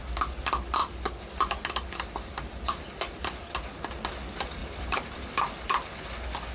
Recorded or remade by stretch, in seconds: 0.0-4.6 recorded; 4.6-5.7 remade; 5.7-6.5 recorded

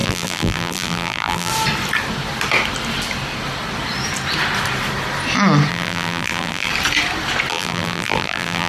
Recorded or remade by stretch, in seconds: 0.0-1.5 remade; 1.5-5.7 recorded; 5.7-6.7 remade; 6.7-7.5 recorded; 7.5-8.7 remade

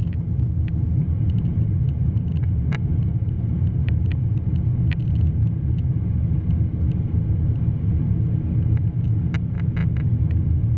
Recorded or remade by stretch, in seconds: 0.0-1.0 recorded; 1.0-5.0 remade; 5.0-6.7 recorded; 6.7-8.2 remade; 8.2-10.8 recorded

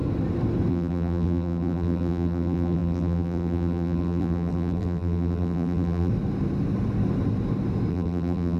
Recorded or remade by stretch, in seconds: 0.0-0.7 recorded; 0.7-6.1 remade; 6.1-7.9 recorded; 7.9-8.6 remade

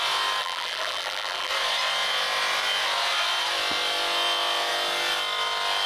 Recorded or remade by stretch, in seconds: 0.0-0.4 recorded; 0.4-1.5 remade; 1.5-5.9 recorded